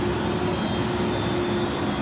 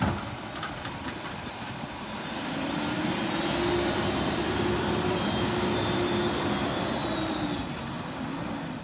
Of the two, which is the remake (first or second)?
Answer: second